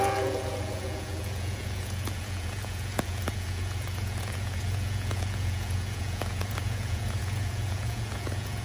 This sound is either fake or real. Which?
fake